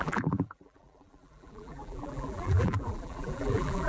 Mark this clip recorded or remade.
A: remade